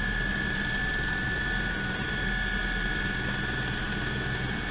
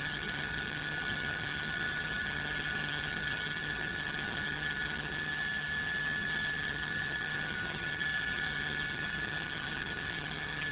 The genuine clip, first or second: first